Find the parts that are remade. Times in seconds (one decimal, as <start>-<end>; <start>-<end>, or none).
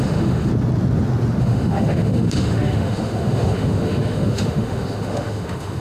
0.0-0.5; 1.4-5.8